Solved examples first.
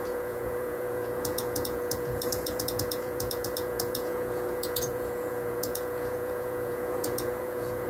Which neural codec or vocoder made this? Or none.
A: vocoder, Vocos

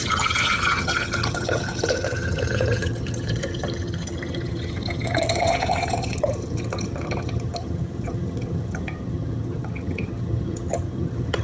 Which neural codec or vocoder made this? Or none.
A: vocoder, HiFi-GAN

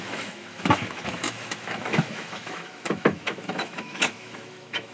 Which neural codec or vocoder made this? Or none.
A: autoencoder, DAC-VAE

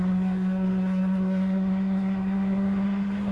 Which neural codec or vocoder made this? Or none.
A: codec, SNAC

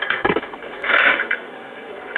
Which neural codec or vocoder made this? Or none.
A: codec, SNAC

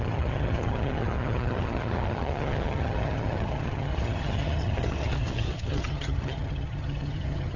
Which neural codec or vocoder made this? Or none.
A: vocoder, HiFi-GAN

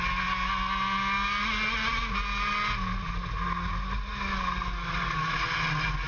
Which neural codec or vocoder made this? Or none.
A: none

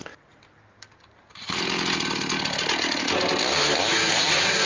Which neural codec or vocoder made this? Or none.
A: none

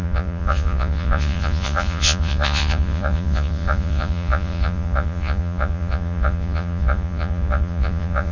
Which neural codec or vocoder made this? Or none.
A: vocoder, Vocos